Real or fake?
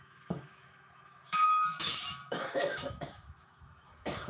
fake